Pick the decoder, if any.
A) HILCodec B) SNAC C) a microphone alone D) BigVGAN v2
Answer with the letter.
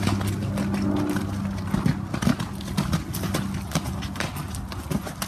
C